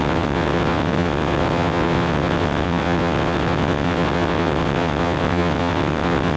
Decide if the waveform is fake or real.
fake